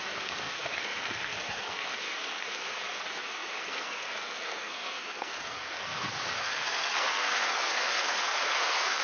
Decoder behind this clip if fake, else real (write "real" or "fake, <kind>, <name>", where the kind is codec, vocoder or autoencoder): fake, codec, SNAC